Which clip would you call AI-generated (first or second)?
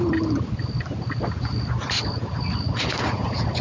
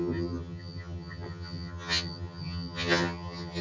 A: second